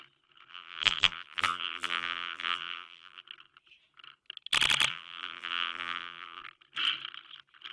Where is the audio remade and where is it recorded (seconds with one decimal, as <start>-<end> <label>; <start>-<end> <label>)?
0.0-0.5 recorded; 0.5-3.2 remade; 3.2-4.9 recorded; 4.9-6.4 remade; 6.4-7.7 recorded